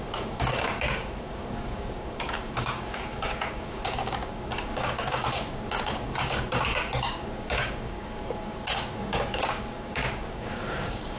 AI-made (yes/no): yes